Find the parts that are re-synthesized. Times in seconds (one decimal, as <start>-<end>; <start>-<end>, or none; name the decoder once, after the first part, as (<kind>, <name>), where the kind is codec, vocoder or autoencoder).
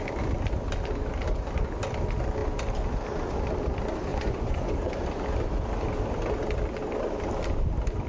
4.1-4.7 (vocoder, Vocos)